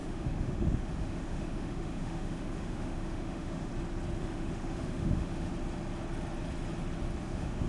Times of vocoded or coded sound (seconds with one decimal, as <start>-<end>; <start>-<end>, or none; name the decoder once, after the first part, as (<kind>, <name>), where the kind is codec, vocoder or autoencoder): 0.0-3.7 (autoencoder, DAC-VAE); 4.2-5.5; 7.2-7.7